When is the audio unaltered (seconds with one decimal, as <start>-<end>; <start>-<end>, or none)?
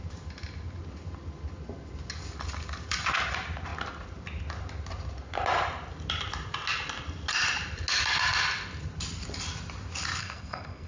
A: 0.0-10.2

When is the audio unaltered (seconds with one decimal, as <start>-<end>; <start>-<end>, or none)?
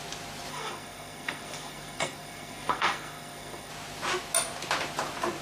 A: 0.0-0.5; 3.7-5.4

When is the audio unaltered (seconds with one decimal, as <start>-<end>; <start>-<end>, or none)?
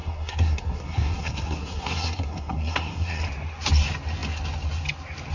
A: 3.2-5.3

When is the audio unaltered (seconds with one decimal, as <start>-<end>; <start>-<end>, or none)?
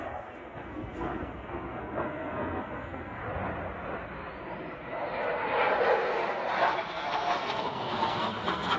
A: 3.2-6.6